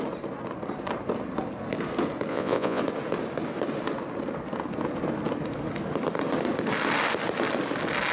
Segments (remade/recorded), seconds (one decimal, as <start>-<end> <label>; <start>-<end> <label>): 0.0-2.3 recorded; 2.3-2.8 remade; 2.8-8.1 recorded